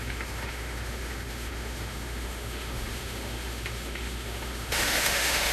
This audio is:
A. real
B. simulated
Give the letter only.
B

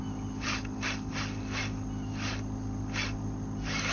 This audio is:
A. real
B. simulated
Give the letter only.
A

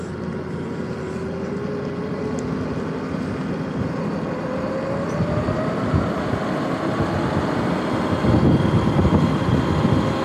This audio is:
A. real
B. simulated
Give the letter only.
A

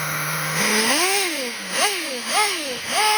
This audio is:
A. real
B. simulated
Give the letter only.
B